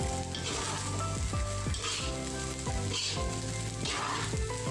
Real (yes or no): yes